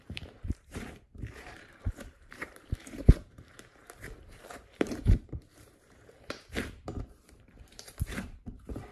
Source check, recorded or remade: remade